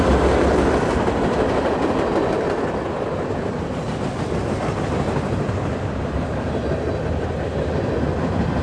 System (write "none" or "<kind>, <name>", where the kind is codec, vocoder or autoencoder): none